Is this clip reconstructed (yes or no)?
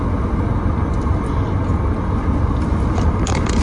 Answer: no